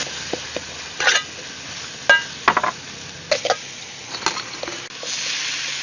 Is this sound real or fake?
real